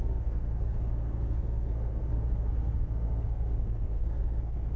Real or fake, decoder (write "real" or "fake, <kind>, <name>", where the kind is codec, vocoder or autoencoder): fake, codec, SNAC